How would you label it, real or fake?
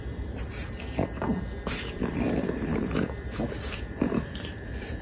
fake